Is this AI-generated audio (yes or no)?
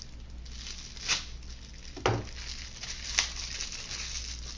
no